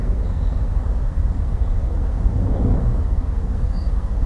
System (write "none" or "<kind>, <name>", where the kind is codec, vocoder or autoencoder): codec, SNAC